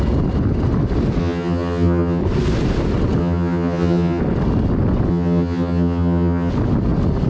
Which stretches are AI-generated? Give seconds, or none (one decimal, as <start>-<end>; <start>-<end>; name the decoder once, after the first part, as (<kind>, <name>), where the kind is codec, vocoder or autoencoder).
1.2-2.2 (vocoder, HiFi-GAN); 3.2-4.2; 5.1-6.5